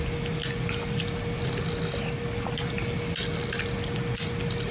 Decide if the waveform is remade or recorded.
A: recorded